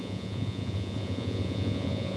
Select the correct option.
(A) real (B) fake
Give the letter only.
B